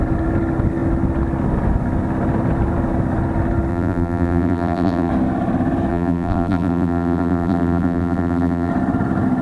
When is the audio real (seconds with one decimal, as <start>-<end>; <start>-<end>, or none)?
0.0-3.7; 5.1-5.9; 8.7-9.4